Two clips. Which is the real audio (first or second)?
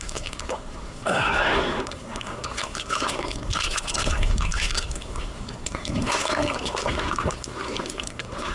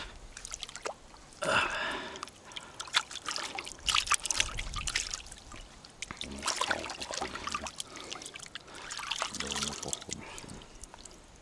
second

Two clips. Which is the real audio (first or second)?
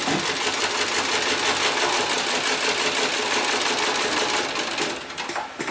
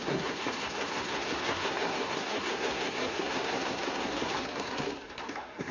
first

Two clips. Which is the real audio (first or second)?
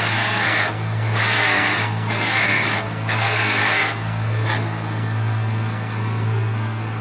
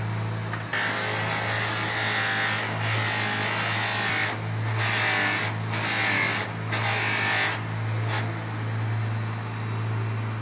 second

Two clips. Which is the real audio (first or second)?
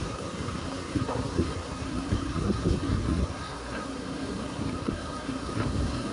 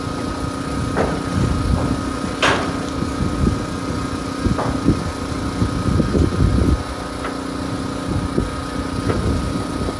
second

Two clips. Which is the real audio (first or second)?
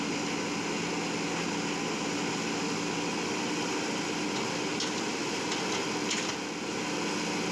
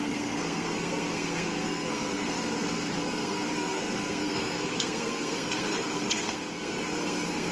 first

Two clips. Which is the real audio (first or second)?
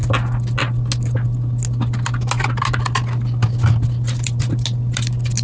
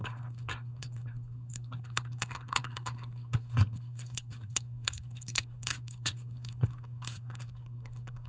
first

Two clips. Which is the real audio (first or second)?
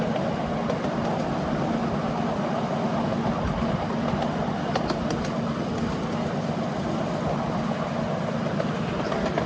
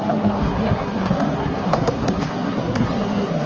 first